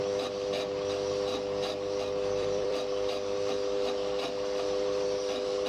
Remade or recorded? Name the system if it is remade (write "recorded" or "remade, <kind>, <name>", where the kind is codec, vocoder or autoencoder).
remade, vocoder, BigVGAN v2